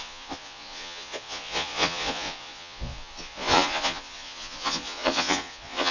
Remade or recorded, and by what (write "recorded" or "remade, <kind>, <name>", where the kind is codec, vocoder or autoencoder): remade, vocoder, Vocos